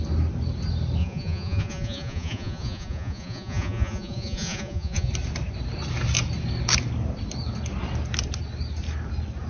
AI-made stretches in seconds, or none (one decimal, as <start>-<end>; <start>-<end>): 1.0-5.1